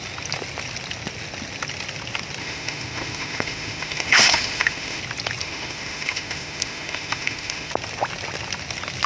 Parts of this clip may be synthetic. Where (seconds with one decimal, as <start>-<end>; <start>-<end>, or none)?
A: 2.4-5.0; 5.4-7.7